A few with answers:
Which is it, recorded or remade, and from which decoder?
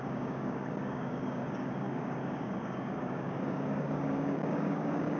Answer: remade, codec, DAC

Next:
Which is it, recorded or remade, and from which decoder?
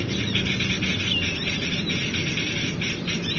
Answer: recorded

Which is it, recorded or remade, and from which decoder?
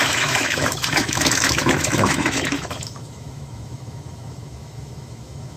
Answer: remade, autoencoder, DAC-VAE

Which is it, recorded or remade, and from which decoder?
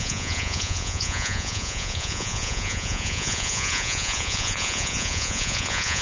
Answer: remade, vocoder, Vocos